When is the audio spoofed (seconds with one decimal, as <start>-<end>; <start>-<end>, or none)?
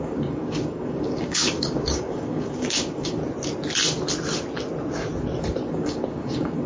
0.0-3.2; 5.7-6.7